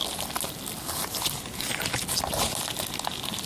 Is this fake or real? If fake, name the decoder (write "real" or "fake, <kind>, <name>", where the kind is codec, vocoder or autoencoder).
real